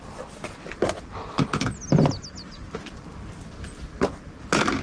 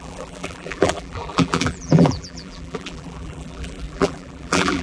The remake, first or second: second